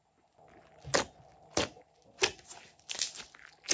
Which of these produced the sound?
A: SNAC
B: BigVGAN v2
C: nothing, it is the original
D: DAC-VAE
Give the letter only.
C